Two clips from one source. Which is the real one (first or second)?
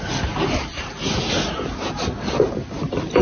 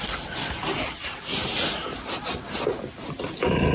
first